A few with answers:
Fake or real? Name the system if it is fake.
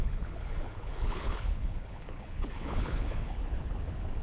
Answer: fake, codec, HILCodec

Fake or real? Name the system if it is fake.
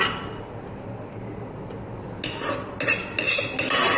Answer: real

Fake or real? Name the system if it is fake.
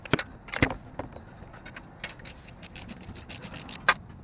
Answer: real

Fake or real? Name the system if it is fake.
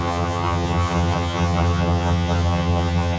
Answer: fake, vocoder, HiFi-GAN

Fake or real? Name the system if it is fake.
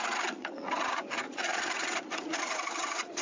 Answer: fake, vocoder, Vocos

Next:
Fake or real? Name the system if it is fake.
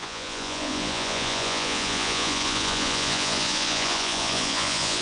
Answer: fake, vocoder, Vocos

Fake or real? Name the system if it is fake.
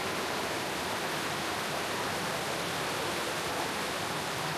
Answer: real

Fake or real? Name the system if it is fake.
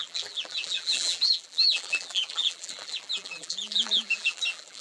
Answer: fake, vocoder, BigVGAN v2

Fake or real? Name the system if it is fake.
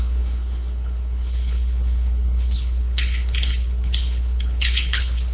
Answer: fake, codec, HILCodec